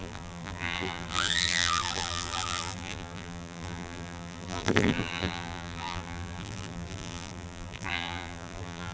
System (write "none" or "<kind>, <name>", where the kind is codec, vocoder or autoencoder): vocoder, BigVGAN v2